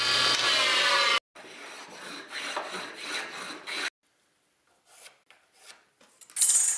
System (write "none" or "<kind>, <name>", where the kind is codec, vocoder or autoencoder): none